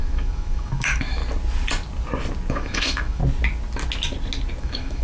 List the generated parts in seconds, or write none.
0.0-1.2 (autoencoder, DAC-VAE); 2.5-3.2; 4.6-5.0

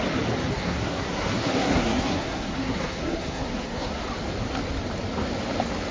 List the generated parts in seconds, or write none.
0.5-4.0 (codec, SNAC)